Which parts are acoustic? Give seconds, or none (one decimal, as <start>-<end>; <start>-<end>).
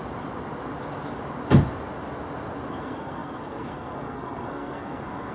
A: 0.0-2.7